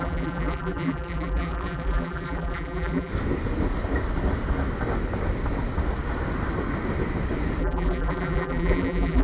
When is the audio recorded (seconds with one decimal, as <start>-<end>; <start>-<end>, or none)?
3.1-7.6